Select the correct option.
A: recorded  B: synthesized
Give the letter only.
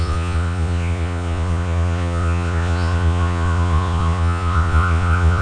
B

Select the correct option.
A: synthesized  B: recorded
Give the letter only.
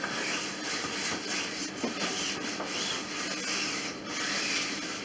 B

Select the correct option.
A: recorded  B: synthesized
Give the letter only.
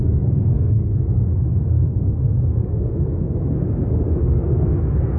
B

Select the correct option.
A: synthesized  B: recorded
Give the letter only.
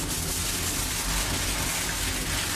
B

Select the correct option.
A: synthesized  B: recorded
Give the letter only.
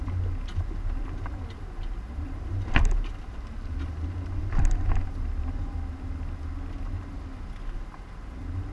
B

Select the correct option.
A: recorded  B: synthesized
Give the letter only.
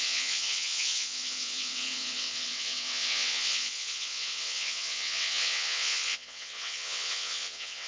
B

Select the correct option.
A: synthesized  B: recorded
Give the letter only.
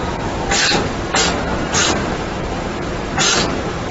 A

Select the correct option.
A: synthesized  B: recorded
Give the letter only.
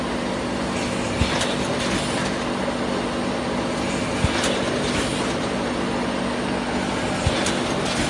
B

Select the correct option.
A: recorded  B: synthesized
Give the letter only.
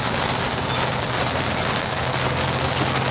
A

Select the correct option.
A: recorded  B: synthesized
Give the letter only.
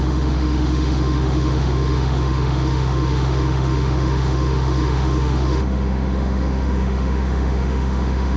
B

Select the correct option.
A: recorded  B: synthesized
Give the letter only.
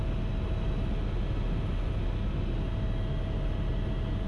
A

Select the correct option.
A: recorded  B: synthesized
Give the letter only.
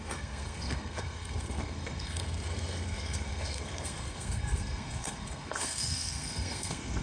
B